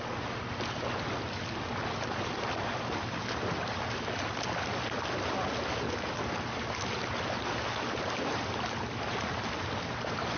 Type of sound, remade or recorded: recorded